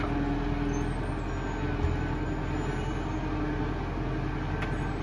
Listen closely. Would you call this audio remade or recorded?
recorded